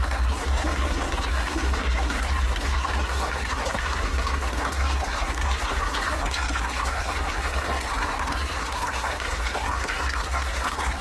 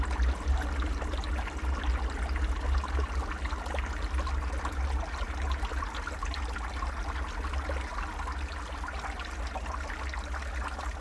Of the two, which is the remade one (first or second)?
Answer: first